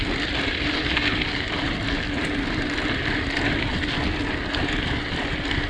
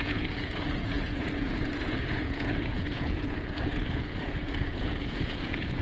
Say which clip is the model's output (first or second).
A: second